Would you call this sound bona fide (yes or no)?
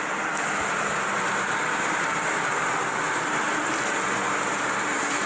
yes